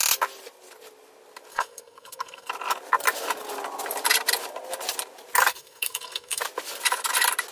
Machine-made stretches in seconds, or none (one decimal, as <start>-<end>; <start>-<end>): 1.5-2.5; 5.5-6.4